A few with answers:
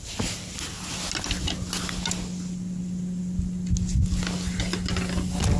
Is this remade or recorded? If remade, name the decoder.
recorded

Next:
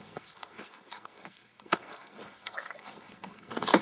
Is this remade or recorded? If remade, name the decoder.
remade, codec, SNAC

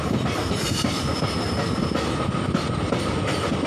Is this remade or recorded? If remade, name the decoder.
recorded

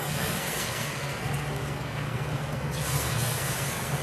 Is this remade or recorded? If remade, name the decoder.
remade, codec, SNAC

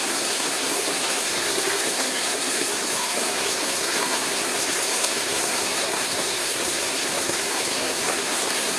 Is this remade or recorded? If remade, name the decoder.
remade, codec, SNAC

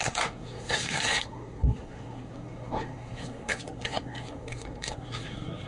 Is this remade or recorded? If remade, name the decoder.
remade, codec, SNAC